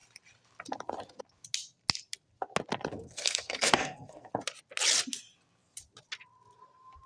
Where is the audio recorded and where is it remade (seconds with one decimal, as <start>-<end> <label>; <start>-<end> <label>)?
0.0-2.9 recorded; 2.9-4.3 remade; 4.3-7.1 recorded